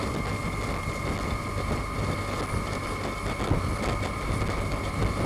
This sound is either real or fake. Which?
real